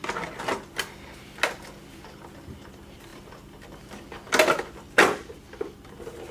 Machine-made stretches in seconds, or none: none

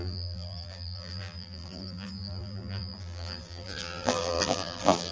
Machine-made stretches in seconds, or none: 0.0-5.1 (vocoder, BigVGAN v2)